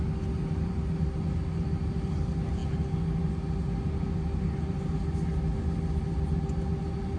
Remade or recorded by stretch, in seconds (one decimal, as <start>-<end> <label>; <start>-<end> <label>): 0.0-7.2 recorded